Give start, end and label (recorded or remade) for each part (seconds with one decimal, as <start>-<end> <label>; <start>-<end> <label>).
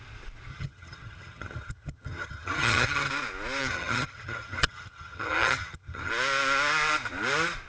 0.0-0.5 recorded; 0.5-3.1 remade; 3.1-3.6 recorded; 3.6-6.1 remade; 6.1-7.7 recorded